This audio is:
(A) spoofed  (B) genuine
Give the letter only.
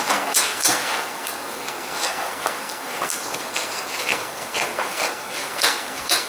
A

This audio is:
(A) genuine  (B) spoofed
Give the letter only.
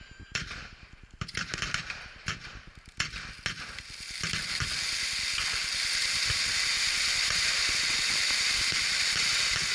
A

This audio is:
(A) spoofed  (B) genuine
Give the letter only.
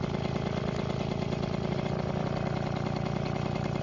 B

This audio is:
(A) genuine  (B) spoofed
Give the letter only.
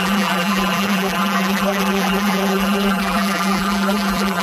B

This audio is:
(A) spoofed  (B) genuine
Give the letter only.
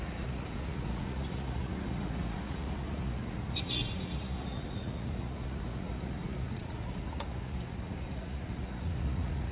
A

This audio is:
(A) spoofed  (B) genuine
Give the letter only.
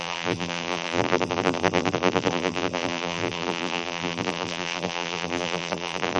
A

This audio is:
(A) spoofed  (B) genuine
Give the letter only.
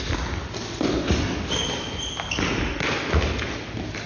B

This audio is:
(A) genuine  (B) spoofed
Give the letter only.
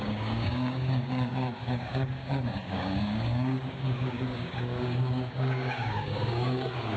B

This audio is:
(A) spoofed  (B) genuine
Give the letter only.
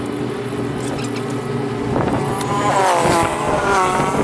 B